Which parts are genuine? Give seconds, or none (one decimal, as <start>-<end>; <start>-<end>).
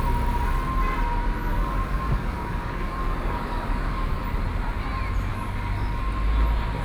0.0-1.5; 4.2-5.3; 6.0-6.8